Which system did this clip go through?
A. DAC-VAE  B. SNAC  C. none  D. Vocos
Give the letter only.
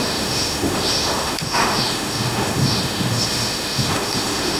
A